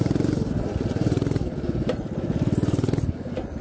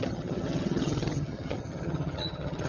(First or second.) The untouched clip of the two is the first